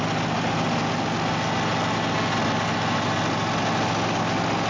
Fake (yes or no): no